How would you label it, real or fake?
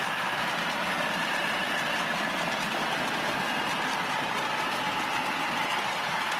real